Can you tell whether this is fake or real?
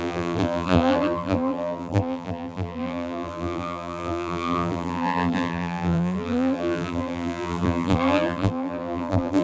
fake